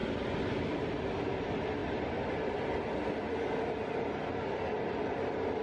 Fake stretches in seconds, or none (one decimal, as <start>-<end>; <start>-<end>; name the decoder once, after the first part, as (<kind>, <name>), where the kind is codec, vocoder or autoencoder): 0.0-1.0 (vocoder, BigVGAN v2)